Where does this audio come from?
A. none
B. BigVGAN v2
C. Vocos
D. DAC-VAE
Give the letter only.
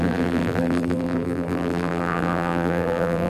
B